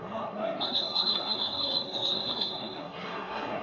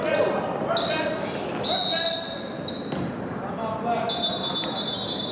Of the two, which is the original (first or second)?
second